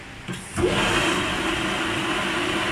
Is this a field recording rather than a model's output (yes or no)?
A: yes